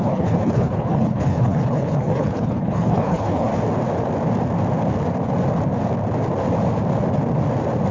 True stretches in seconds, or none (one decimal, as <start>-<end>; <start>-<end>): 3.5-7.9